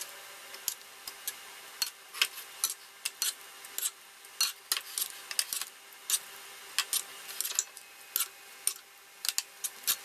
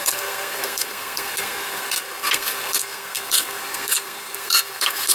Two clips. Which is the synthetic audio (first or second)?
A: second